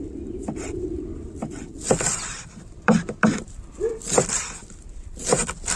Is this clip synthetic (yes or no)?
yes